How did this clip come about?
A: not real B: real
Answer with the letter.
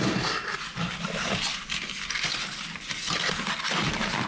B